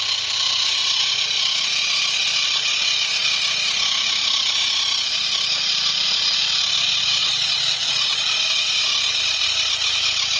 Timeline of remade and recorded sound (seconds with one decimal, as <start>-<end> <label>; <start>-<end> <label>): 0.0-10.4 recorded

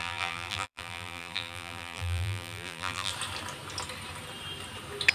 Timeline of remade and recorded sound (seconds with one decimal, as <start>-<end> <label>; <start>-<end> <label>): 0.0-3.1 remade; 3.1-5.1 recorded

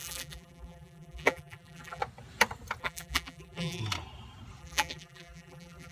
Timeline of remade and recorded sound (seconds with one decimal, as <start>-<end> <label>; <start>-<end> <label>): 0.0-2.0 remade; 2.0-2.8 recorded; 2.8-3.8 remade; 3.8-4.6 recorded; 4.6-5.9 remade